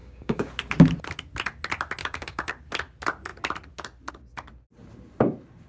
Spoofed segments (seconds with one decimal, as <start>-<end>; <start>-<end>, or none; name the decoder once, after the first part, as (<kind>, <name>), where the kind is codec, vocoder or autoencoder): 0.0-0.5 (codec, DAC); 2.0-2.5